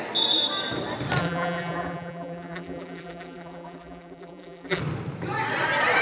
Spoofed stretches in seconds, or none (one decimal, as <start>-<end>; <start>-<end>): 1.2-4.8